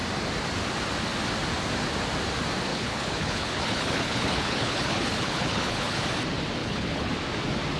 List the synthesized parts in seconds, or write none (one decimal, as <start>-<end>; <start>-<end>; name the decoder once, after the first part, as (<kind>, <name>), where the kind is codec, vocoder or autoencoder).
2.7-6.0 (codec, HILCodec); 6.6-7.1